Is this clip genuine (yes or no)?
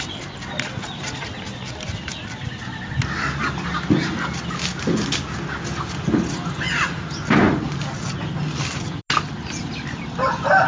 yes